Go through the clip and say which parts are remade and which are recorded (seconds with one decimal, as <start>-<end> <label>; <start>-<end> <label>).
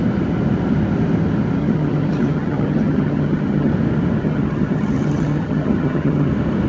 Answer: 0.0-1.6 recorded; 1.6-3.7 remade; 3.7-4.2 recorded; 4.2-6.3 remade; 6.3-6.7 recorded